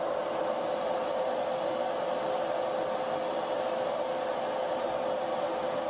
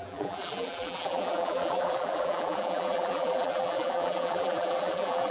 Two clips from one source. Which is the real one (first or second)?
first